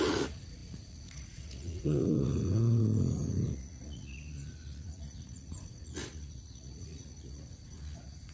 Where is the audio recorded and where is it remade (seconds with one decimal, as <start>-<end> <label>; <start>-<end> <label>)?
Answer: 0.0-8.3 remade